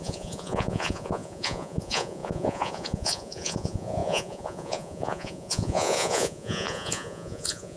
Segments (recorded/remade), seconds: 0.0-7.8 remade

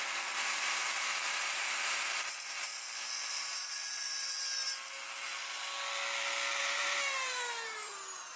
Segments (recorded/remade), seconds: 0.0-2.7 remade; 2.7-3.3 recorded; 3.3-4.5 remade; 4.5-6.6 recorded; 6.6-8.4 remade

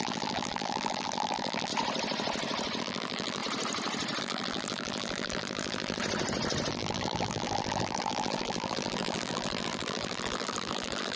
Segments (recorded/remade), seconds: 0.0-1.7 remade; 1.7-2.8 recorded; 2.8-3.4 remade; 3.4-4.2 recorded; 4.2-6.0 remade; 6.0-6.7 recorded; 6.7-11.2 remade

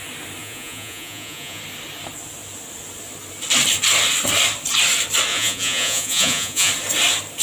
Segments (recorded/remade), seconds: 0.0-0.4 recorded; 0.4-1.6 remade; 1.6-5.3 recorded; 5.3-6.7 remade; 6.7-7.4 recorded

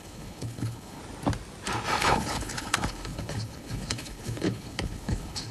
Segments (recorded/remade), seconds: 0.0-1.0 remade; 1.0-2.0 recorded; 2.0-5.5 remade

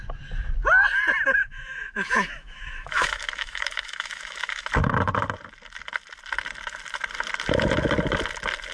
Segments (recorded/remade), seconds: 0.0-1.4 recorded; 1.4-4.7 remade; 4.7-8.7 recorded

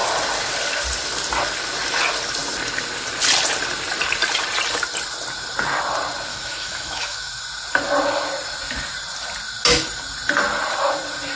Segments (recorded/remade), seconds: 0.0-6.3 recorded; 6.3-7.4 remade; 7.4-11.4 recorded

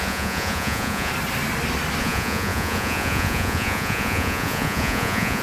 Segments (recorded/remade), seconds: 0.0-1.1 remade; 1.1-2.0 recorded; 2.0-5.4 remade